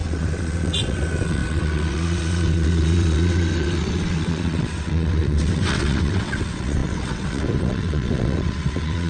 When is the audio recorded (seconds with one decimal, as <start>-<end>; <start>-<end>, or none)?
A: none